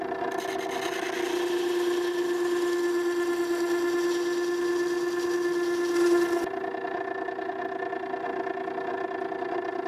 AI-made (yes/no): no